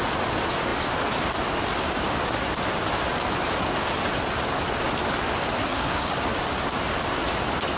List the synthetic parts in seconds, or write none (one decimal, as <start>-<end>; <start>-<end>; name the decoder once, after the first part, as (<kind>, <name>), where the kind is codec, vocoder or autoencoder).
5.6-6.1 (codec, SNAC)